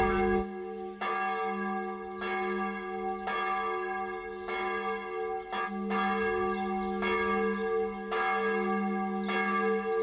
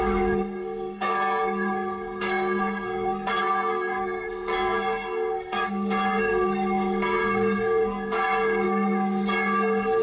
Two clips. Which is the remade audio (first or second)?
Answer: second